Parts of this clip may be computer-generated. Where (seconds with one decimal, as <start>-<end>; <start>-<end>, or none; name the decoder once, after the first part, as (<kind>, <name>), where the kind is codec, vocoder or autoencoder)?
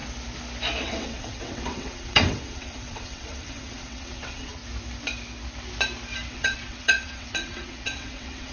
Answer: 0.8-4.6 (vocoder, WaveNeXt); 6.3-8.5